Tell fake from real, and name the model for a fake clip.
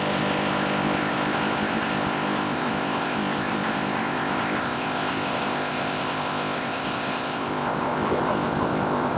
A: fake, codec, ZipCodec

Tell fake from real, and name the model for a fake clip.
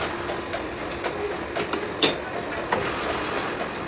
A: real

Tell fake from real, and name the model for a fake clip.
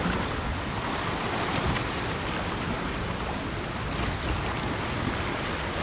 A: real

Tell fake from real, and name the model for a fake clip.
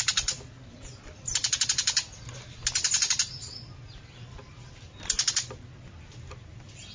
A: real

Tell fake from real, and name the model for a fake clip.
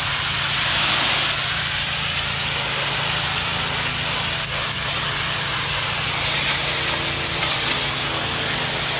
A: real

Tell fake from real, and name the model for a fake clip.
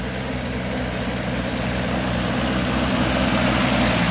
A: real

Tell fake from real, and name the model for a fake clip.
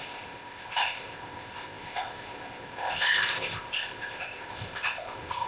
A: fake, codec, ZipCodec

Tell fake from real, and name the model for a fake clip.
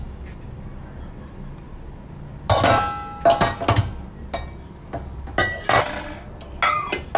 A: real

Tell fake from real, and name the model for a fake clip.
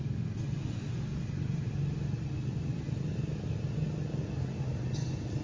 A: real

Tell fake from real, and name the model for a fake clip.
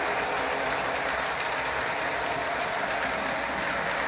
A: real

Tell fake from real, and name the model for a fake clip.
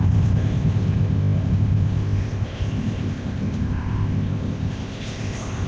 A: fake, codec, ZipCodec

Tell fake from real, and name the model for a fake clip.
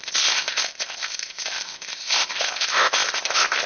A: fake, codec, ZipCodec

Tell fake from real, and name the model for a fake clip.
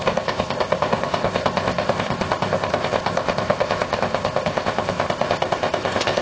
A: fake, codec, ZipCodec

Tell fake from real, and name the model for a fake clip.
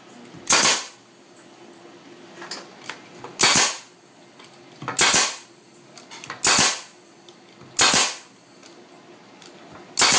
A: real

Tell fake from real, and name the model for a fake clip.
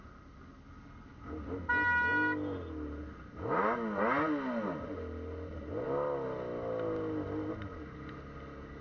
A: real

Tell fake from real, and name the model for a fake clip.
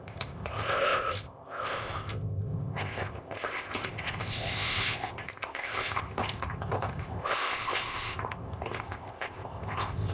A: fake, codec, ZipCodec